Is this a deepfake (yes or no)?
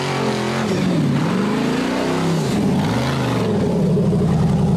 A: no